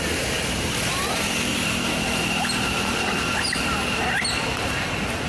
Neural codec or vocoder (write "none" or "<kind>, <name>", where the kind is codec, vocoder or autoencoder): vocoder, BigVGAN v2